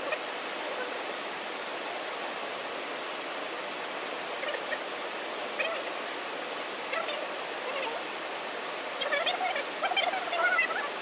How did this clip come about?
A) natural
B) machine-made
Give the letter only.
A